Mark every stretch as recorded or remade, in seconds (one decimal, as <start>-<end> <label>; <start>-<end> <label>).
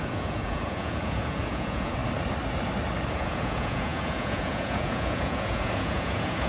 0.0-2.0 remade; 2.0-3.1 recorded; 3.1-6.5 remade